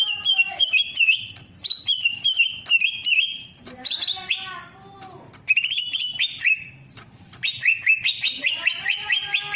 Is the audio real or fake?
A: fake